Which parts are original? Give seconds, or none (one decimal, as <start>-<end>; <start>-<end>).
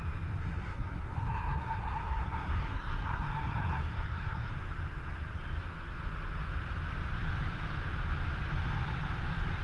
0.0-0.4; 4.5-9.6